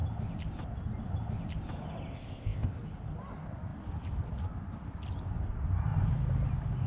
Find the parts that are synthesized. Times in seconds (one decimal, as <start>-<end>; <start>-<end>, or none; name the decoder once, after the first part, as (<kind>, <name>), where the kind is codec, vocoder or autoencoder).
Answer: 2.1-2.8 (codec, ZipCodec)